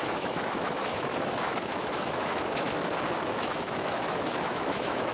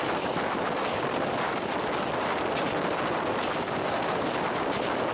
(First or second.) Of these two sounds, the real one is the second